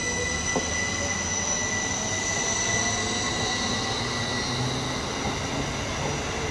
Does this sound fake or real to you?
real